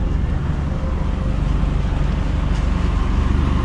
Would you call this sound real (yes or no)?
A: yes